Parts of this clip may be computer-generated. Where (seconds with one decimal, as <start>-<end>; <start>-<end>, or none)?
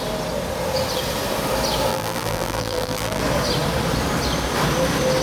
1.9-3.2